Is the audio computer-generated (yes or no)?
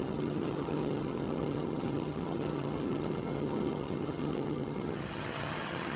yes